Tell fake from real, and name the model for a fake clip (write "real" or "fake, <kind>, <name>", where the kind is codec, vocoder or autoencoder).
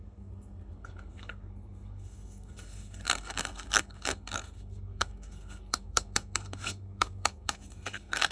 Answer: fake, codec, SNAC